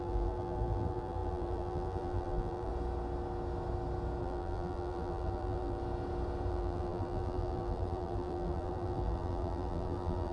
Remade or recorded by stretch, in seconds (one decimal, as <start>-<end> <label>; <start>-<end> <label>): 0.0-2.7 remade; 2.7-4.2 recorded; 4.2-5.8 remade; 5.8-6.5 recorded; 6.5-10.3 remade